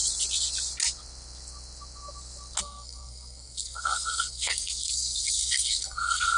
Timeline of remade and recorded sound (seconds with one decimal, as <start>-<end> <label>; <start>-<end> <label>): 0.0-2.6 recorded; 2.6-6.4 remade